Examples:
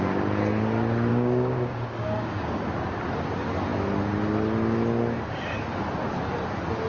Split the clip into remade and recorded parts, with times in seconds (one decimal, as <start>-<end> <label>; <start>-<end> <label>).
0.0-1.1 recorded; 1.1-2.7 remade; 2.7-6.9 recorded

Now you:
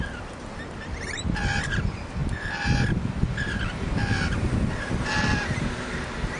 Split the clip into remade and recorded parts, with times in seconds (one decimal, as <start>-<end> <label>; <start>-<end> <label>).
0.0-6.4 recorded

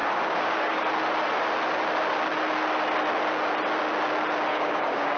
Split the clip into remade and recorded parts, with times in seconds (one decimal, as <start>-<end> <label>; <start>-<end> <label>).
0.0-0.8 remade; 0.8-4.5 recorded; 4.5-5.2 remade

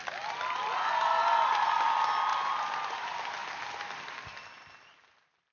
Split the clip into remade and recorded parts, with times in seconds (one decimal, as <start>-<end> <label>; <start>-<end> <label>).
0.0-5.5 recorded

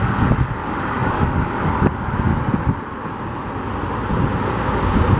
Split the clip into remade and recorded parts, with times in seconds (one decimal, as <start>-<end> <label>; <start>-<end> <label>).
0.0-2.3 remade; 2.3-5.2 recorded

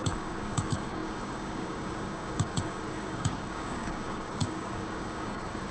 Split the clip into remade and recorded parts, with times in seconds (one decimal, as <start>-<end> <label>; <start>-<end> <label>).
0.0-5.7 remade

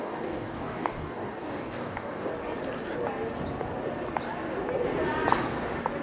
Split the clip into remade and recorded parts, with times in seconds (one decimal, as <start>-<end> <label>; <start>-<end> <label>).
0.0-2.3 remade; 2.3-6.0 recorded

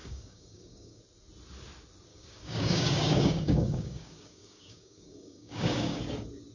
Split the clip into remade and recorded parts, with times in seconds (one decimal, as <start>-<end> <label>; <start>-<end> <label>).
0.0-1.0 remade; 1.0-2.1 recorded; 2.1-6.0 remade; 6.0-6.5 recorded